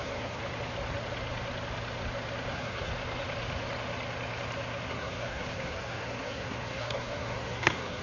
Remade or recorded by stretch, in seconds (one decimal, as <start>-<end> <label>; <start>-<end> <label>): 0.0-0.4 remade; 0.4-2.5 recorded; 2.5-2.9 remade; 2.9-4.9 recorded; 4.9-8.0 remade